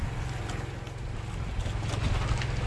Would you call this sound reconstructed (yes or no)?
no